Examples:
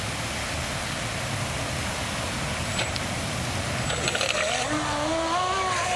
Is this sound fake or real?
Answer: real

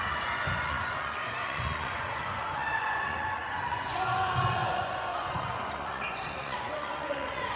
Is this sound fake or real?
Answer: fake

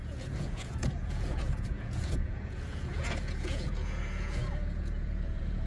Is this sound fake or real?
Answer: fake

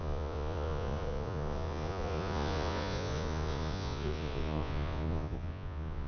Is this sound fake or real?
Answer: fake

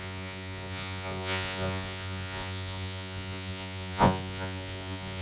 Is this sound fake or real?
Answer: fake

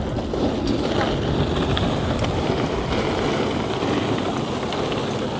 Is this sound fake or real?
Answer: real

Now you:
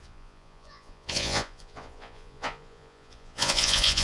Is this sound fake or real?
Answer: fake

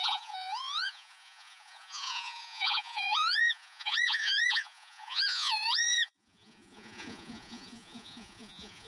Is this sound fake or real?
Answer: fake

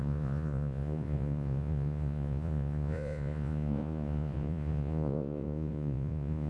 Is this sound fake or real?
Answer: fake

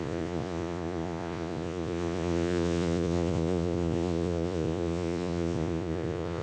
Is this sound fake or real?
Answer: fake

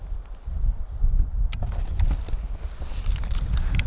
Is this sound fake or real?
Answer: real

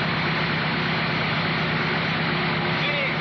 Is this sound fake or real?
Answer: real